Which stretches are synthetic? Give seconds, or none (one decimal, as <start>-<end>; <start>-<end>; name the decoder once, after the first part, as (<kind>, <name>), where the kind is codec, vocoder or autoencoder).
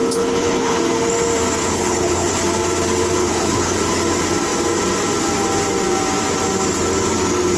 0.0-0.8 (codec, HILCodec); 1.6-2.4; 3.2-3.8